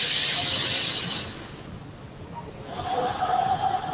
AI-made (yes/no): no